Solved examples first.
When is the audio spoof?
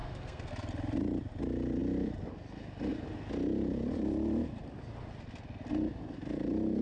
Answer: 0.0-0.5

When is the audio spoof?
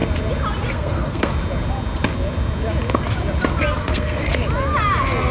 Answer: 0.7-1.3; 3.7-4.3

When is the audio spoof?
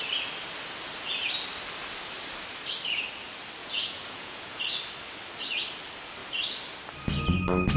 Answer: 3.6-4.6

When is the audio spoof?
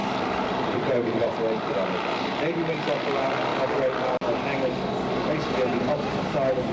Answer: 0.0-1.4; 3.5-4.4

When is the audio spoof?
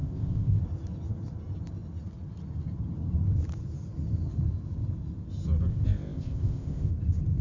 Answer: 0.0-0.6; 5.7-6.9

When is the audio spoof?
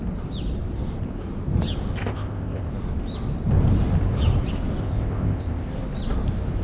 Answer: 2.0-2.7; 4.8-5.7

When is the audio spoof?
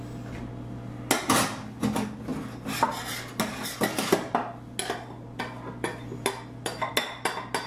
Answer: none